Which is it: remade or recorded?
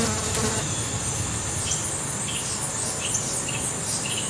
remade